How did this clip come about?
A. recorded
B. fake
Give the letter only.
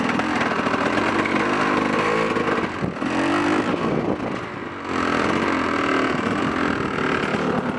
A